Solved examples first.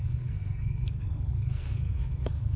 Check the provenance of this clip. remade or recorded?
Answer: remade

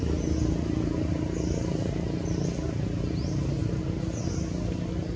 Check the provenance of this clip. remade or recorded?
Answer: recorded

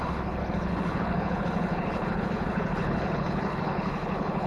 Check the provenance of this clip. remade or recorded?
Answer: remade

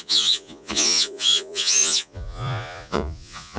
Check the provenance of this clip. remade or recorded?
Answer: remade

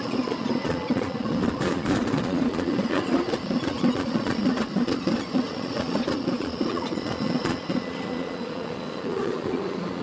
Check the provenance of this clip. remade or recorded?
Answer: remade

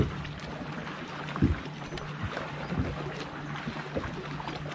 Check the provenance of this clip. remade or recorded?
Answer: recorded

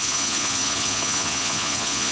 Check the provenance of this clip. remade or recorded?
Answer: remade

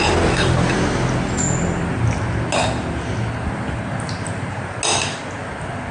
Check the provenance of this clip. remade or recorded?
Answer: recorded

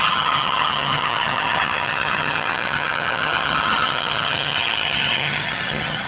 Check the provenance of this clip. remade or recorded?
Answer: remade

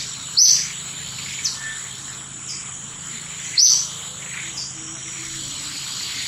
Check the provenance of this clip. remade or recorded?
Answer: recorded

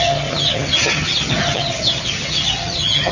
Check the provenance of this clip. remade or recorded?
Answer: remade